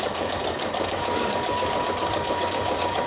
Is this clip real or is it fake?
fake